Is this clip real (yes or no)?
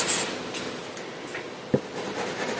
yes